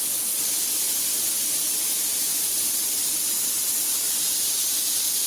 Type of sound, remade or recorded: recorded